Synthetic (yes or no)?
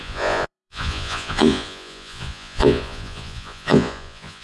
yes